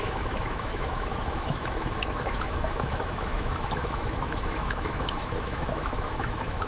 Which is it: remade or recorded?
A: remade